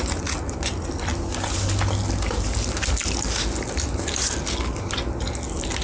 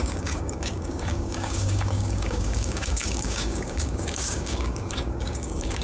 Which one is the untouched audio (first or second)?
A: first